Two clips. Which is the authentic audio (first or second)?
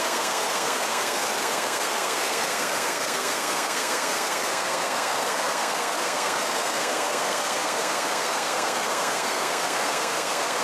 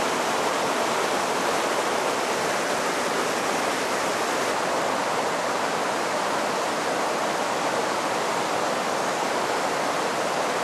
second